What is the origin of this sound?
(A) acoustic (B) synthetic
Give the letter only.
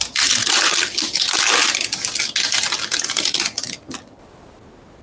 A